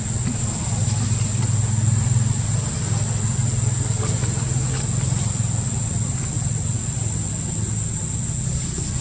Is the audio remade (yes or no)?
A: no